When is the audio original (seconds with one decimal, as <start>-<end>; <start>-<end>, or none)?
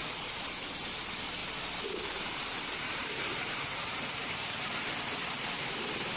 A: 0.0-3.0; 4.7-6.2